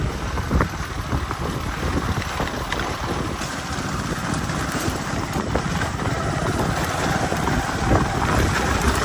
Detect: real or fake fake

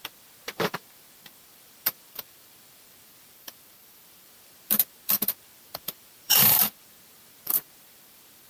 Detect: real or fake fake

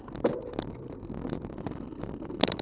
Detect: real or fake fake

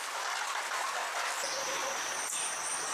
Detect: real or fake real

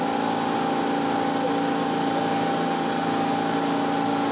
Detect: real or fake real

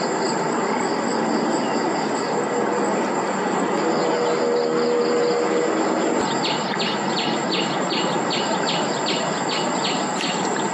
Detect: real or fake real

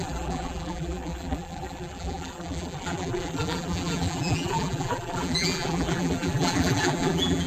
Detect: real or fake fake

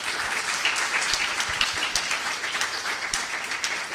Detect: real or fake fake